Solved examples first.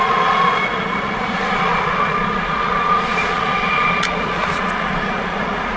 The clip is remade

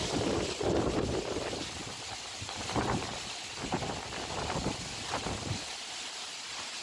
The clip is recorded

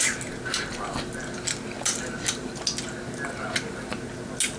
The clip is recorded